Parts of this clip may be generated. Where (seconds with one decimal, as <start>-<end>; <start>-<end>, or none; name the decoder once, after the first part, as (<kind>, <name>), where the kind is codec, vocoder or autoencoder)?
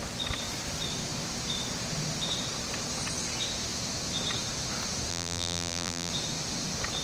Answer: 5.1-6.1 (vocoder, BigVGAN v2)